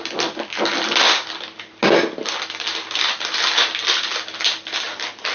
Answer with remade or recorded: recorded